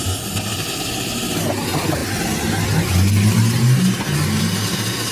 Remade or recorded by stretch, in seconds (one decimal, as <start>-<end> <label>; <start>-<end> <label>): 0.0-0.5 recorded; 0.5-1.4 remade; 1.4-5.1 recorded